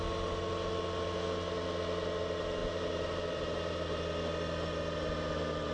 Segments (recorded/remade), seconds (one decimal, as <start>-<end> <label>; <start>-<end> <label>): 0.0-2.6 recorded; 2.6-4.0 remade; 4.0-5.7 recorded